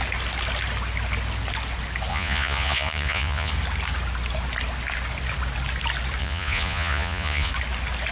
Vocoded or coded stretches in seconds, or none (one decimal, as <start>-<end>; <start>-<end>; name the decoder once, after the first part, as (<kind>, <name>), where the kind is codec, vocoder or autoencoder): 2.1-3.5 (vocoder, Vocos); 6.2-7.5